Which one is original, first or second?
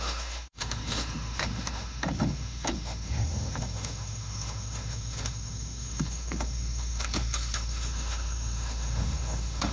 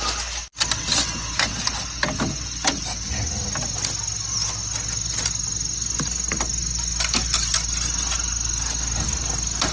second